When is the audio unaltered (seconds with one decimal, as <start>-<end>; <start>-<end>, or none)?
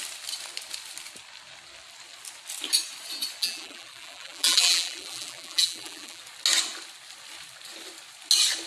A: 0.0-3.4; 6.2-8.7